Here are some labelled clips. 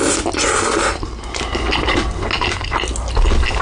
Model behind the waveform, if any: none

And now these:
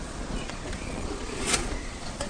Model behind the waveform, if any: vocoder, Vocos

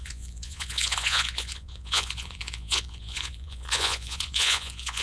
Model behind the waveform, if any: vocoder, Vocos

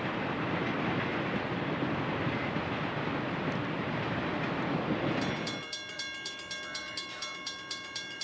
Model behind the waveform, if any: none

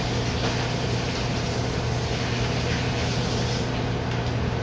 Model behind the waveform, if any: none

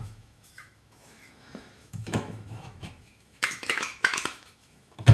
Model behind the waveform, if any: autoencoder, DAC-VAE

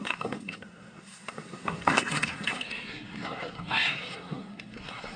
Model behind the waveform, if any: codec, SNAC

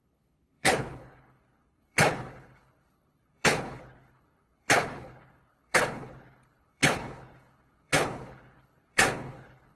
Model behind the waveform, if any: codec, HILCodec